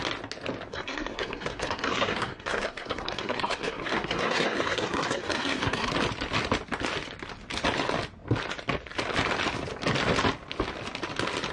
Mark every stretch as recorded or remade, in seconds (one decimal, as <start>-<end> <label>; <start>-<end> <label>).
0.0-0.7 recorded; 0.7-5.9 remade; 5.9-11.5 recorded